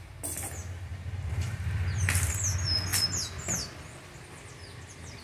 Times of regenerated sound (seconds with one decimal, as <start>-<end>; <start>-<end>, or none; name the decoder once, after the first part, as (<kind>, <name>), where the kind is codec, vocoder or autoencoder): 0.9-2.3 (vocoder, BigVGAN v2)